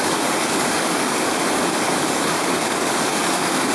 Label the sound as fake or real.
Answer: fake